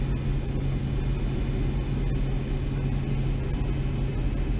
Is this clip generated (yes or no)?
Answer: no